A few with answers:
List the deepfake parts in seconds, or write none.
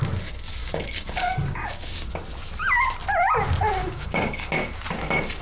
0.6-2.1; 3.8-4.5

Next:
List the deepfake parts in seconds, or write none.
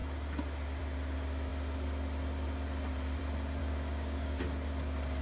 3.6-4.4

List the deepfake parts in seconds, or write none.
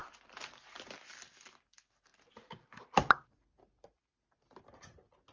none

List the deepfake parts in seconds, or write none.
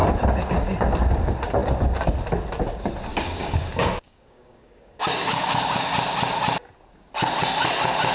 3.1-5.9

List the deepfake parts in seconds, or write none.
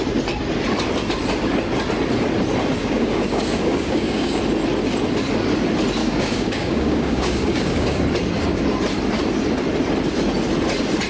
2.8-4.4; 6.0-8.0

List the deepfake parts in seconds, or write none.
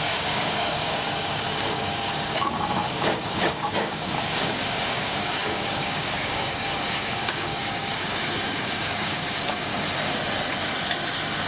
0.0-9.7